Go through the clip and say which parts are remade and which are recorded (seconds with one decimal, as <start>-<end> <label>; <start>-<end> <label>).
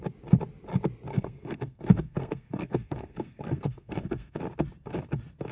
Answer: 0.0-1.1 recorded; 1.1-4.4 remade; 4.4-5.5 recorded